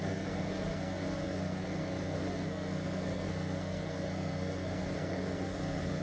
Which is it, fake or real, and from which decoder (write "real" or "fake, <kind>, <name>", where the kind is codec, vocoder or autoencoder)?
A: fake, codec, SNAC